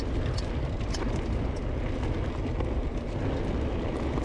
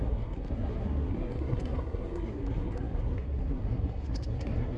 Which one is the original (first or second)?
first